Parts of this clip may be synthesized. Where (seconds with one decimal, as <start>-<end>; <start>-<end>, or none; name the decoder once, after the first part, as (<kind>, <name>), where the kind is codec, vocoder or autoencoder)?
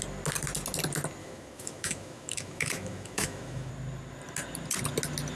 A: 1.2-3.7 (autoencoder, DAC-VAE)